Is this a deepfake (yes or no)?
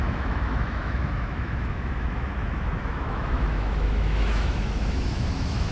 yes